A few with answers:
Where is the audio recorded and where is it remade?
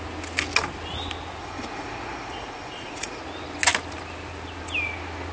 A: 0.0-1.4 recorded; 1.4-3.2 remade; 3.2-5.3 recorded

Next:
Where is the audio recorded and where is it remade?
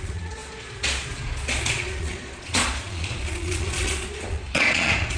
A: 0.0-5.2 remade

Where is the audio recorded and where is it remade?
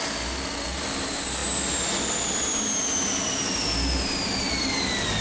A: 0.0-5.2 recorded